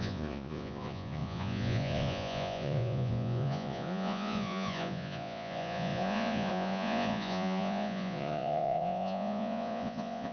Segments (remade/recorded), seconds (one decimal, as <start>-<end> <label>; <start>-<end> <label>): 0.0-10.3 remade